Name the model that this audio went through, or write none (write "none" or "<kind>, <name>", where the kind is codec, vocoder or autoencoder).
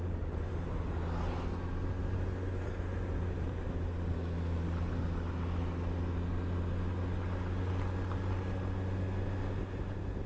none